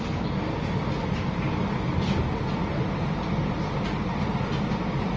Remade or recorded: recorded